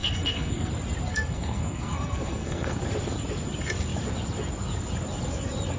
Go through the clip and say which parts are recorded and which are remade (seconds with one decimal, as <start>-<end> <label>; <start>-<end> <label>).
0.0-0.7 remade; 0.7-1.1 recorded; 1.1-2.8 remade; 2.8-5.8 recorded